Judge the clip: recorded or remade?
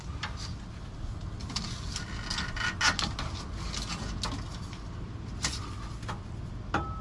recorded